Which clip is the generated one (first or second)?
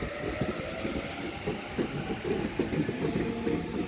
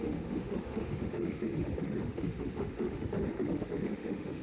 second